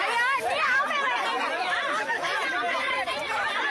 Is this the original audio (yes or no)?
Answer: yes